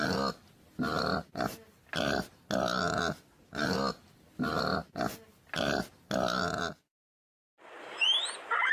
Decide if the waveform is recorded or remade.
recorded